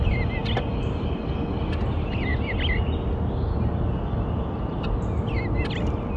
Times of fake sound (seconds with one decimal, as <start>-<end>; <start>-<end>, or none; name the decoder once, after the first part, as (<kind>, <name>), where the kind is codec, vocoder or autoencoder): none

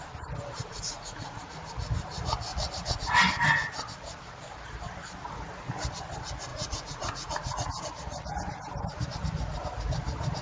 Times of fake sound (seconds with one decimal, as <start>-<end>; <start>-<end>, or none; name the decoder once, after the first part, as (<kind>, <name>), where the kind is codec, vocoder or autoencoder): 0.6-1.4 (vocoder, Vocos); 2.5-3.2; 6.5-7.8

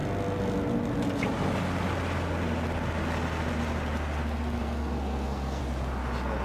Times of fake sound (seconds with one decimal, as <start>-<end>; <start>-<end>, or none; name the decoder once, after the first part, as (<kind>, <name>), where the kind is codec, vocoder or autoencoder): 4.6-5.6 (codec, SNAC)

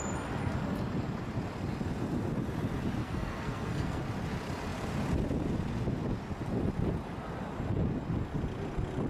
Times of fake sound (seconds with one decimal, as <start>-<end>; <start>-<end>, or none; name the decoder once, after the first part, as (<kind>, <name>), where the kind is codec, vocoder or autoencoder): 3.0-4.0 (codec, SNAC)

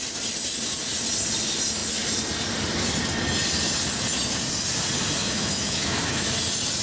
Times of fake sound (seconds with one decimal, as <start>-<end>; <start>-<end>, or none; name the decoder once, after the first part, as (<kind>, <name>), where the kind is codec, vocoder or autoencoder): 5.2-6.3 (autoencoder, DAC-VAE)

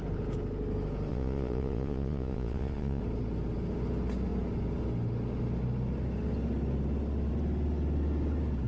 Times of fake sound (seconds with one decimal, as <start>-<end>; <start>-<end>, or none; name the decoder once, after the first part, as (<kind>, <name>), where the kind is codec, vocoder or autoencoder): 1.1-3.0 (vocoder, Vocos)

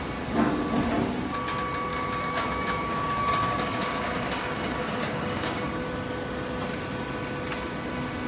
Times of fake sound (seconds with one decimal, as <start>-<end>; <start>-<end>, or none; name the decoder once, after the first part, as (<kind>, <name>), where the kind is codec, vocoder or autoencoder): 1.9-5.8 (codec, DAC)

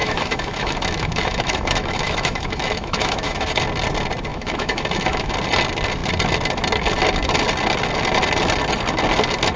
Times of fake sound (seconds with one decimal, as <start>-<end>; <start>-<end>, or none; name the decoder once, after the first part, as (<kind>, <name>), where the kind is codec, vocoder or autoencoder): 0.0-3.6 (autoencoder, DAC-VAE); 4.3-5.3